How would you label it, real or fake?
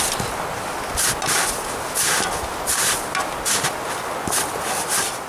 real